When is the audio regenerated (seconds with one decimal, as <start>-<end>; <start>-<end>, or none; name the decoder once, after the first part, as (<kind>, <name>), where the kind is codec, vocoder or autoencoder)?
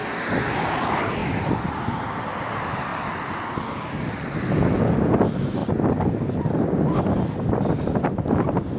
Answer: none